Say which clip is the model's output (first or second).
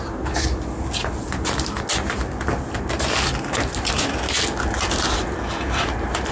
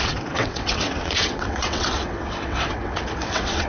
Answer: second